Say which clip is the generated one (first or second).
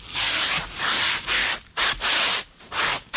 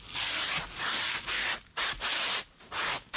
first